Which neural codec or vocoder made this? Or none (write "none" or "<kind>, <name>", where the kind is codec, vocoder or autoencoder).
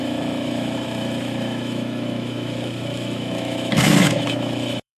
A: autoencoder, DAC-VAE